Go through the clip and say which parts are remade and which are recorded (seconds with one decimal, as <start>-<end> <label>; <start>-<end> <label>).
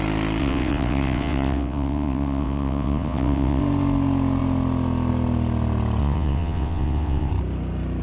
0.0-0.4 recorded; 0.4-3.6 remade; 3.6-6.0 recorded; 6.0-7.3 remade; 7.3-8.0 recorded